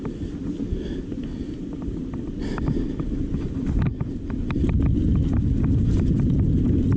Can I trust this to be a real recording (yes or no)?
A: yes